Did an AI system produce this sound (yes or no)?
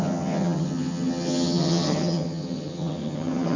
yes